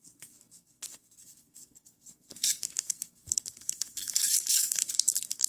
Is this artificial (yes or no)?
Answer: yes